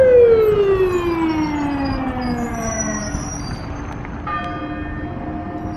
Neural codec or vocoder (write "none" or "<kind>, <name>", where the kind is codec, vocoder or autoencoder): none